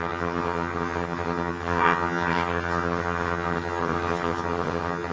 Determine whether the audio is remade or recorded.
remade